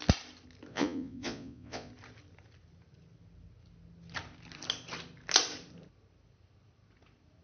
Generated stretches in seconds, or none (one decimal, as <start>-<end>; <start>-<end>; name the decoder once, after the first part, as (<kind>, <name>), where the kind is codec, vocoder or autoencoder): 0.7-1.9 (vocoder, Vocos)